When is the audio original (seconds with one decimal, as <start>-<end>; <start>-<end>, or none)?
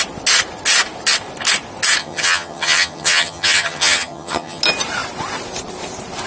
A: 0.0-2.0; 4.6-6.3